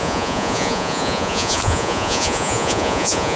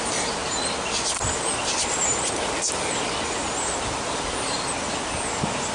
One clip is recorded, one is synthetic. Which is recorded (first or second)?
second